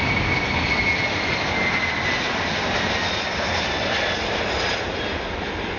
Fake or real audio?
real